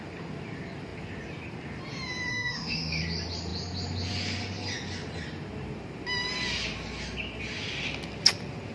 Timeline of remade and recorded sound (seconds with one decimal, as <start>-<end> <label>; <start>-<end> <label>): 0.0-2.3 recorded; 2.3-3.0 remade; 3.0-8.7 recorded